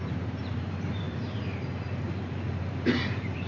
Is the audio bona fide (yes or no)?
no